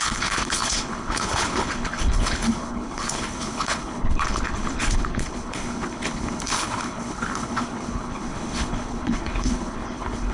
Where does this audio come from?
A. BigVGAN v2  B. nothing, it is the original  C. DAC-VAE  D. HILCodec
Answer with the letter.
D